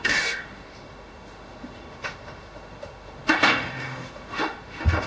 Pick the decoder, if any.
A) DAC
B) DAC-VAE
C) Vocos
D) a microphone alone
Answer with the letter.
B